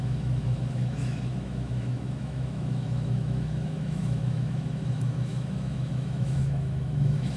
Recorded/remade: remade